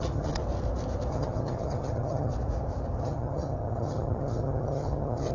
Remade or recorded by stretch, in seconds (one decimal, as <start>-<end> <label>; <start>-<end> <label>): 0.0-0.4 remade; 0.4-1.1 recorded; 1.1-2.3 remade; 2.3-3.0 recorded; 3.0-5.3 remade